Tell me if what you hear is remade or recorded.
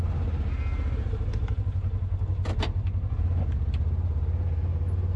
recorded